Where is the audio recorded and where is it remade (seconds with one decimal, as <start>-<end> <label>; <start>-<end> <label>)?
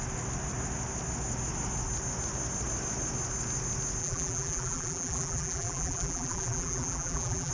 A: 0.0-4.0 recorded; 4.0-7.5 remade